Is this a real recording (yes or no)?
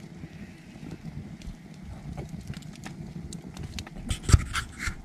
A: yes